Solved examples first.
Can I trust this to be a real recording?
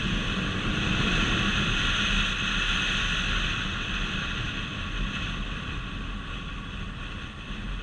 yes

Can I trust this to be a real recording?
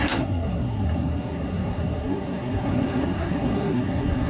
no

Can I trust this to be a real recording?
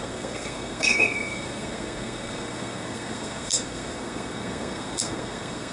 no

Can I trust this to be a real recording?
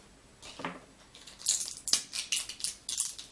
yes